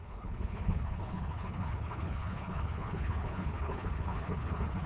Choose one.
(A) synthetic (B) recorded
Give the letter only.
A